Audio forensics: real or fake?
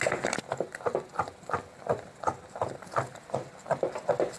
real